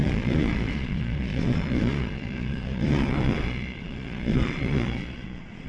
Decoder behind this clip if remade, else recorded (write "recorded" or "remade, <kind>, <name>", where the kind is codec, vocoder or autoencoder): remade, vocoder, Vocos